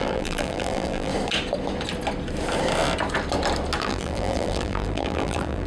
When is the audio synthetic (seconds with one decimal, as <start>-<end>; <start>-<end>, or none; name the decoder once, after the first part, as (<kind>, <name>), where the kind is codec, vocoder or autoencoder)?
0.0-1.1 (vocoder, BigVGAN v2); 3.8-5.7